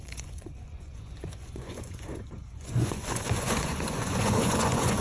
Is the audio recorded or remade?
remade